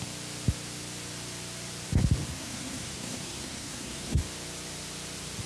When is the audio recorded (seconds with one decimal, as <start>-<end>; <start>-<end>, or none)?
0.0-2.3; 4.2-5.5